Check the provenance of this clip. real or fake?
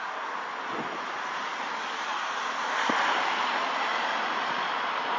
real